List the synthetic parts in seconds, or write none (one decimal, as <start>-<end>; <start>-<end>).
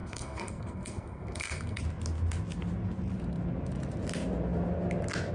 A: 0.0-1.8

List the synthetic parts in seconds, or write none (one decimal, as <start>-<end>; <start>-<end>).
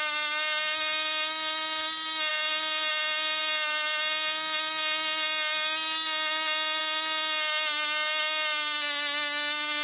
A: none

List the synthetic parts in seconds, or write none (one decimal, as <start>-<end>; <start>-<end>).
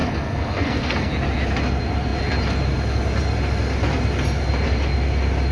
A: 0.0-1.1